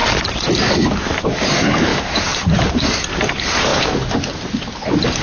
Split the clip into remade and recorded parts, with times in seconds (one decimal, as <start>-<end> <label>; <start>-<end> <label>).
0.0-5.2 recorded